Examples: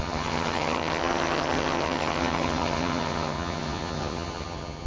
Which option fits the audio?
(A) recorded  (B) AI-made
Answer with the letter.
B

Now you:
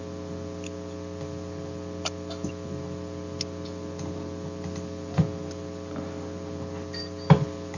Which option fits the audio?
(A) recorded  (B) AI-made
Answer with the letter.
A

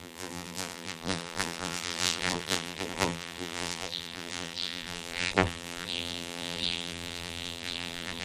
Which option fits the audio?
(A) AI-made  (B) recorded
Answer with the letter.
A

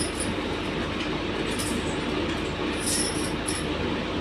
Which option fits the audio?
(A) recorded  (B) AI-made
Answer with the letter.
A